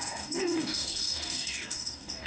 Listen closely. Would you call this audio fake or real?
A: fake